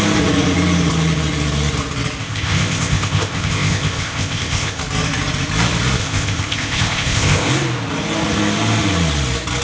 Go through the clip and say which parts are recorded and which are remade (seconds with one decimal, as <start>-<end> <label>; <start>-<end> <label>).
0.0-2.2 recorded; 2.2-4.8 remade; 4.8-6.0 recorded; 6.0-7.5 remade; 7.5-9.6 recorded